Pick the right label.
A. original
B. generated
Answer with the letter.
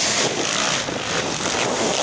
A